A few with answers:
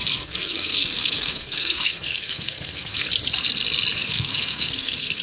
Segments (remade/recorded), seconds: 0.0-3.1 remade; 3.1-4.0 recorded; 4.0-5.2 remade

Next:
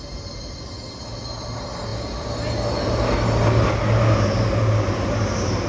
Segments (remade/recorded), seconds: 0.0-5.7 recorded

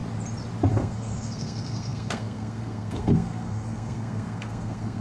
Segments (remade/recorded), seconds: 0.0-0.7 recorded; 0.7-5.0 remade

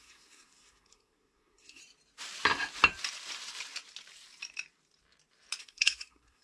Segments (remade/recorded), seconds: 0.0-1.8 remade; 1.8-5.6 recorded; 5.6-6.4 remade

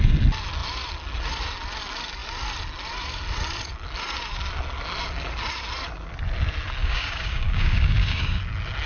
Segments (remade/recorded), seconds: 0.0-6.8 recorded; 6.8-8.4 remade; 8.4-8.9 recorded